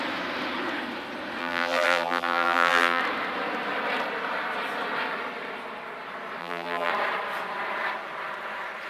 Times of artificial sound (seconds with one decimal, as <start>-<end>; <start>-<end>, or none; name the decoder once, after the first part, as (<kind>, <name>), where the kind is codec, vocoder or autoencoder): 1.4-3.0 (vocoder, BigVGAN v2); 6.4-6.9